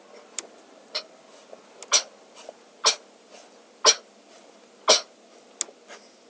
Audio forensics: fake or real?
real